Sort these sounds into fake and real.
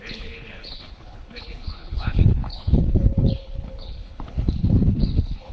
fake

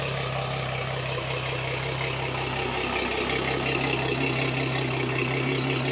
real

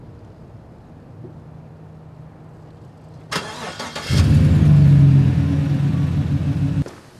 real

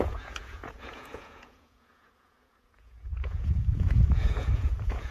fake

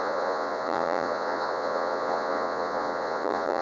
fake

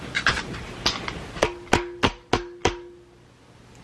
real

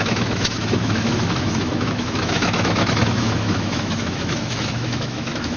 fake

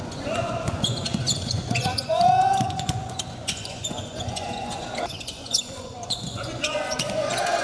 fake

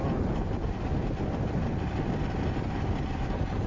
real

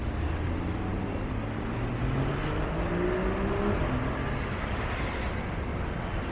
real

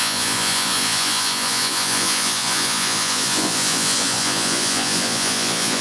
fake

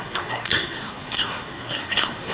fake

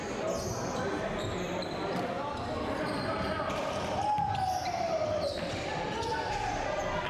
real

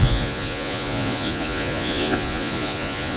fake